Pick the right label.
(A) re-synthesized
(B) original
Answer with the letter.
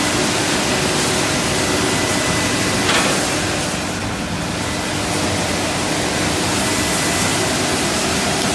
B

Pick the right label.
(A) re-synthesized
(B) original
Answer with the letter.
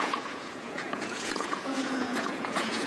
A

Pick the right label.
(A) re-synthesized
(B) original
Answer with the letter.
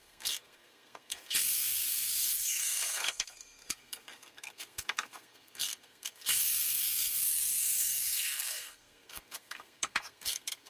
A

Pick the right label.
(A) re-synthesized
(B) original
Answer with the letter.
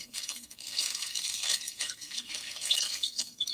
A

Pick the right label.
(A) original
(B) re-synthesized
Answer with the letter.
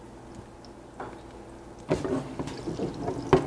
A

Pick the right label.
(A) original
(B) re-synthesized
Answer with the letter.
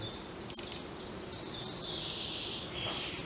A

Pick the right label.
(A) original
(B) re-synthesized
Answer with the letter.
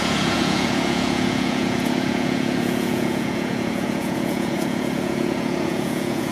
B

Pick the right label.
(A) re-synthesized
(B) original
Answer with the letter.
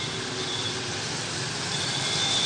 A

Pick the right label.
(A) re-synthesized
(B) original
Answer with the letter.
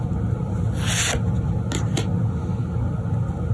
B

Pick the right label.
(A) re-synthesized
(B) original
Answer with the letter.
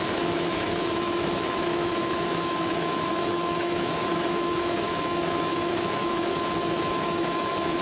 A